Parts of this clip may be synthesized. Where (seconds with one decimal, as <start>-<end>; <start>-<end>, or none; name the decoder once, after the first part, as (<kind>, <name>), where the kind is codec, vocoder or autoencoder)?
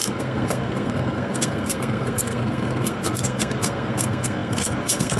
0.0-5.2 (codec, SNAC)